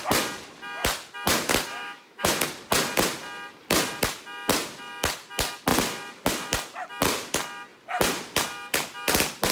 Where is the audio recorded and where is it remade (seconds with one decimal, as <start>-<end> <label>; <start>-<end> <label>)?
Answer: 0.0-1.7 recorded; 1.7-2.3 remade; 2.3-9.5 recorded